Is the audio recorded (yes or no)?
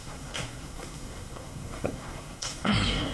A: no